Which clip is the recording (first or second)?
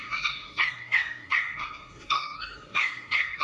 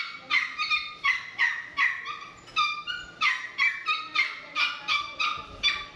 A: second